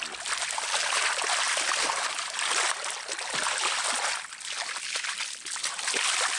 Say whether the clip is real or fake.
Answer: real